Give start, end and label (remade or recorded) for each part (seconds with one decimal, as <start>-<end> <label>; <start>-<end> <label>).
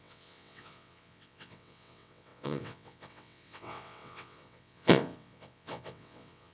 0.0-6.5 remade